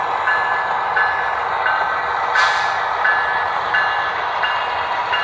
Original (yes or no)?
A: yes